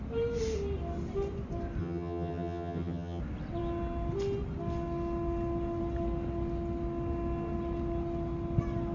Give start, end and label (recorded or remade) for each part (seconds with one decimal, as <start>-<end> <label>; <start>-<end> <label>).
0.0-1.8 recorded; 1.8-3.2 remade; 3.2-8.9 recorded